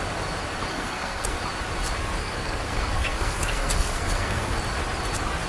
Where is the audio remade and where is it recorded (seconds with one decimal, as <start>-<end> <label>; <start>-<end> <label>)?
0.0-0.7 recorded; 0.7-1.4 remade; 1.4-2.2 recorded; 2.2-4.6 remade; 4.6-5.5 recorded